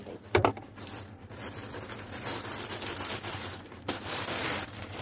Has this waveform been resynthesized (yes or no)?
yes